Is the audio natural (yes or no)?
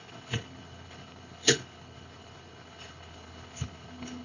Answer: no